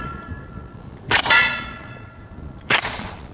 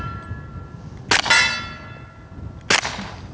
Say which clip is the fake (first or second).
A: first